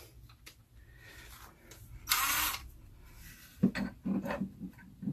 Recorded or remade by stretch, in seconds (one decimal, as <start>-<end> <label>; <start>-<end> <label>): 0.0-5.1 recorded